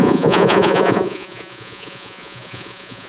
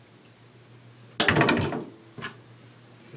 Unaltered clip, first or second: second